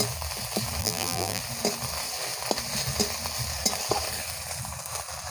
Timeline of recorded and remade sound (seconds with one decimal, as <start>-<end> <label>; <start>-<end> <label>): 0.0-0.8 recorded; 0.8-1.4 remade; 1.4-5.3 recorded